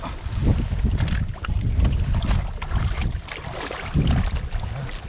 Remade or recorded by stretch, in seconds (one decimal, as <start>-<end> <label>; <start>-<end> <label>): 0.0-5.1 recorded

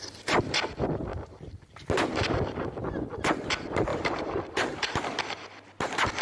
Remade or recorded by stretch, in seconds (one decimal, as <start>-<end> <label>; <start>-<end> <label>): 0.0-3.9 recorded; 3.9-5.0 remade; 5.0-6.2 recorded

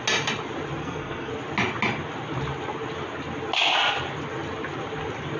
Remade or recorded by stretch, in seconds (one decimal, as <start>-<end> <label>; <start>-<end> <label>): 0.0-0.8 recorded; 0.8-1.3 remade; 1.3-5.4 recorded

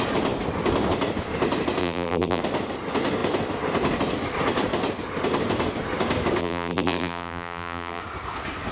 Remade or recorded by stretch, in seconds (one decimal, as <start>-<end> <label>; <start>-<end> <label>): 0.0-1.8 recorded; 1.8-2.4 remade; 2.4-6.4 recorded; 6.4-8.0 remade; 8.0-8.7 recorded

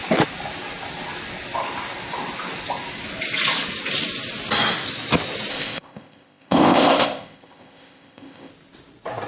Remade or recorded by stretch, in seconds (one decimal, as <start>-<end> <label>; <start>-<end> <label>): 0.0-5.5 recorded; 5.5-8.5 remade; 8.5-9.3 recorded